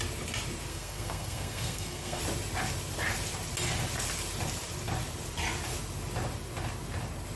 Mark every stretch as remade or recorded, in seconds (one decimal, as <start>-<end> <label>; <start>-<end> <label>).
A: 0.0-0.7 recorded; 0.7-2.2 remade; 2.2-7.4 recorded